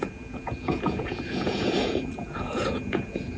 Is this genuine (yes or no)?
no